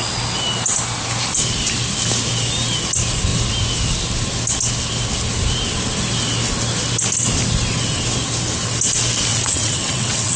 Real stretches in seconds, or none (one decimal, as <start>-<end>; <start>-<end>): 0.0-9.3